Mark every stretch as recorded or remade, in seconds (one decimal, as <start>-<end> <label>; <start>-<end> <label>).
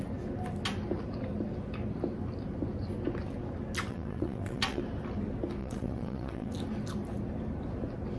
0.0-3.9 recorded; 3.9-4.8 remade; 4.8-5.6 recorded; 5.6-6.5 remade; 6.5-8.2 recorded